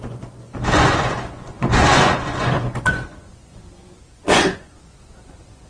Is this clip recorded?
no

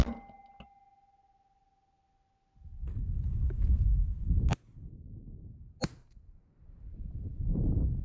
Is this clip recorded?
yes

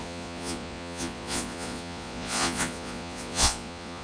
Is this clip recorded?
no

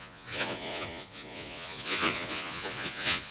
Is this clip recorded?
no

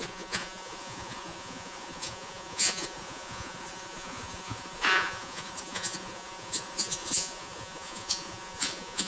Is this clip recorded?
no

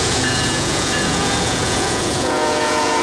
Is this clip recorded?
no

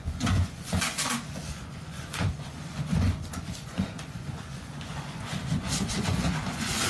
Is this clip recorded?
no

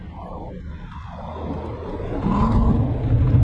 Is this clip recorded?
yes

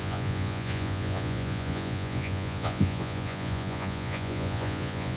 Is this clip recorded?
no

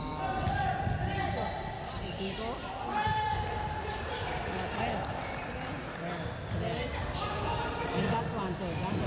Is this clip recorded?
yes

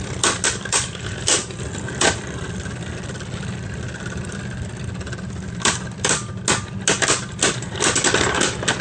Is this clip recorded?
yes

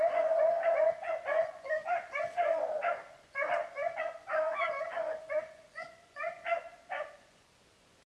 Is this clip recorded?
no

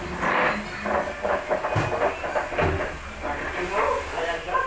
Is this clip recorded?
yes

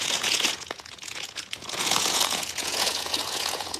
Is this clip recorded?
no